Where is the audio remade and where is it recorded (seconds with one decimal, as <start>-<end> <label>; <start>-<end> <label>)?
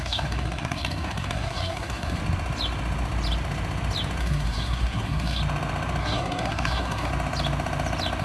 0.0-2.2 remade; 2.2-4.2 recorded; 4.2-5.4 remade; 5.4-6.0 recorded; 6.0-7.1 remade; 7.1-8.2 recorded